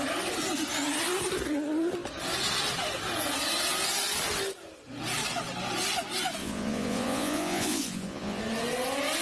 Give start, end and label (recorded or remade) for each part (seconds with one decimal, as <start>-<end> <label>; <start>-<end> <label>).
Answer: 0.0-6.4 recorded; 6.4-8.4 remade; 8.4-9.2 recorded